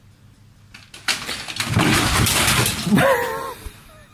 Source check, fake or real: real